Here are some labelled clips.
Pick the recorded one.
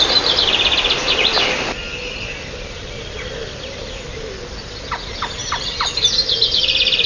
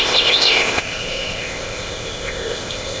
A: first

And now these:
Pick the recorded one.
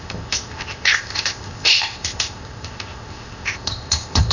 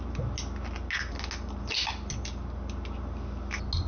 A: second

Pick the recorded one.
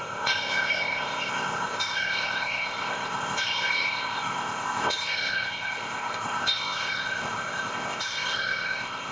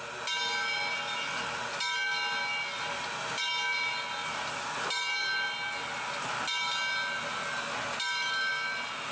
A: second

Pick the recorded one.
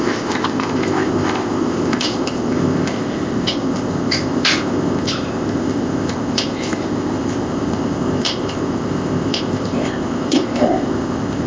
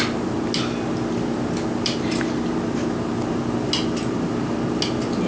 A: second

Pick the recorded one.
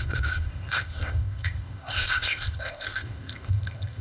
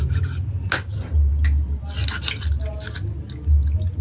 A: second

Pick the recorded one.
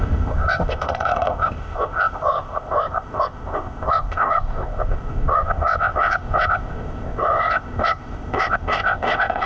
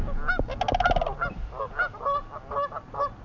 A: second